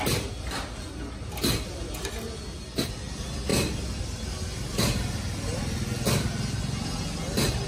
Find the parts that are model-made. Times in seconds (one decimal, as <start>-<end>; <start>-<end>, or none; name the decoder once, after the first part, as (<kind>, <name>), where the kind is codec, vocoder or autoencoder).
none